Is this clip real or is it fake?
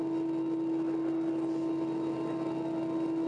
real